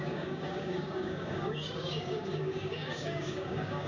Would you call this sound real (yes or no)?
no